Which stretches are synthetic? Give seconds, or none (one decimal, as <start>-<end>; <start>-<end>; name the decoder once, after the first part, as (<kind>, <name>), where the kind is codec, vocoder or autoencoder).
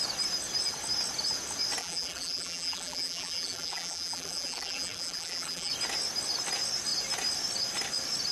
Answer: 1.8-5.7 (vocoder, BigVGAN v2)